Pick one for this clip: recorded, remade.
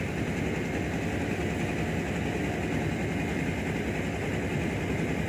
recorded